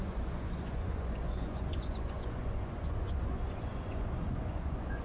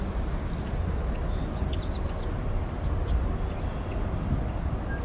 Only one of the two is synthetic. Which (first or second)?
first